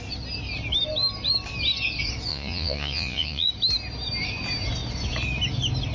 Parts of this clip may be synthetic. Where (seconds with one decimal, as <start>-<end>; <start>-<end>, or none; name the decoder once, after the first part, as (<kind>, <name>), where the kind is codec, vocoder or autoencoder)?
2.3-3.5 (vocoder, Vocos)